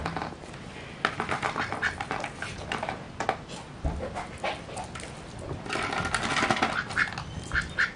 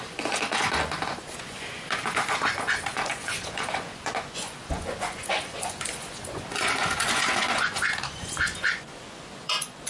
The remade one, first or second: second